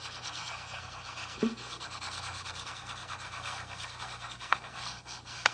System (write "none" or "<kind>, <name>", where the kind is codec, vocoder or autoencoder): codec, SNAC